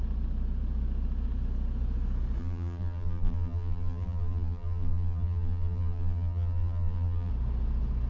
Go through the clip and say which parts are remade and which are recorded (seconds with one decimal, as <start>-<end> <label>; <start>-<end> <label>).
0.0-2.4 recorded; 2.4-7.3 remade; 7.3-8.1 recorded